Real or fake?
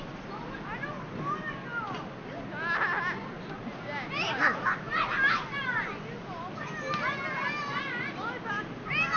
real